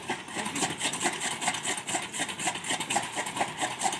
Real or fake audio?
real